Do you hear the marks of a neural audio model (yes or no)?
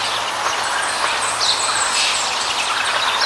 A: no